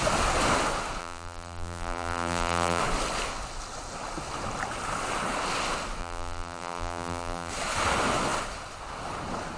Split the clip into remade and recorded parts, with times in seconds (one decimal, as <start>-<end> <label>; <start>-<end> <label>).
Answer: 0.0-1.0 recorded; 1.0-2.8 remade; 2.8-6.0 recorded; 6.0-7.5 remade; 7.5-9.6 recorded